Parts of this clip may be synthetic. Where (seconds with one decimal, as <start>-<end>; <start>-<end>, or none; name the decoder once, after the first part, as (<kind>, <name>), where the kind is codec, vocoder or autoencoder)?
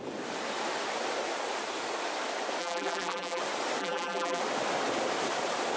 2.6-3.4 (vocoder, BigVGAN v2); 3.8-4.4